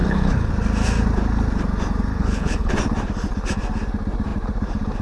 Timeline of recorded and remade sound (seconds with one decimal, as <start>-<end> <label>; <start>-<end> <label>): 0.0-0.5 remade; 0.5-2.1 recorded; 2.1-2.7 remade; 2.7-5.0 recorded

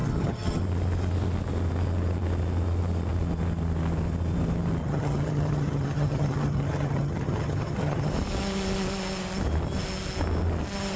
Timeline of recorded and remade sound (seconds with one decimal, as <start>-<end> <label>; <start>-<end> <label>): 0.0-0.6 remade; 0.6-4.8 recorded; 4.8-8.1 remade; 8.1-11.0 recorded

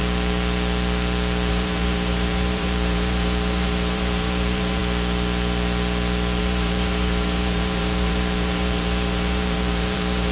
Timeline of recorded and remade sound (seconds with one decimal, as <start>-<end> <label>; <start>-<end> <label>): 0.0-1.5 recorded; 1.5-4.8 remade; 4.8-6.4 recorded; 6.4-10.3 remade

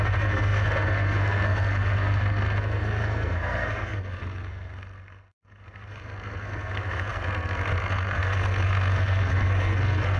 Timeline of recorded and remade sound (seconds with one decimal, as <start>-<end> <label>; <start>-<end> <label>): 0.0-10.2 remade